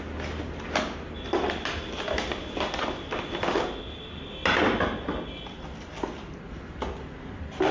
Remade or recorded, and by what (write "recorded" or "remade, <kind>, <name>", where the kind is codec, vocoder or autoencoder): recorded